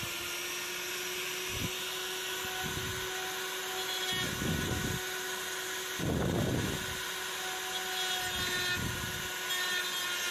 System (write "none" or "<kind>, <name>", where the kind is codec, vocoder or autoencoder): none